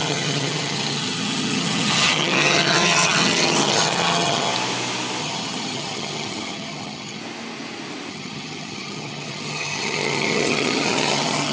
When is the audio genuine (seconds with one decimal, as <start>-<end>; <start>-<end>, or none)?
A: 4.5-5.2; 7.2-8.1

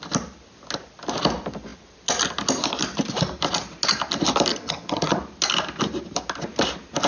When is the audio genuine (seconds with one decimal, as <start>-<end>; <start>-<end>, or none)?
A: 0.0-4.5; 5.2-7.1

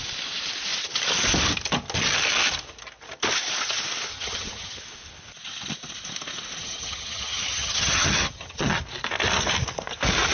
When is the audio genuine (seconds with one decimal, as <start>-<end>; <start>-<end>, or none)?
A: 0.0-4.1; 4.8-6.6; 8.8-10.3

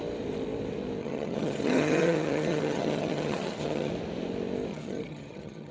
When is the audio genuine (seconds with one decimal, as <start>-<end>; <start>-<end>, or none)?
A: 0.0-1.0; 3.9-4.7

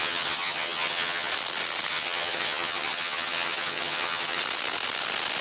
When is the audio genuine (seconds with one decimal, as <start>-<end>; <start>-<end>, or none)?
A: 1.3-1.9; 4.4-5.4